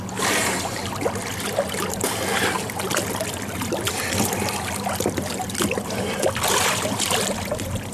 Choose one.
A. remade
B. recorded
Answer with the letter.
B